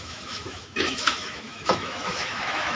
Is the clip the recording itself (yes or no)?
no